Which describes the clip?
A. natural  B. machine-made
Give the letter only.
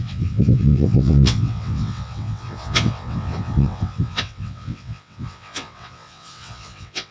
B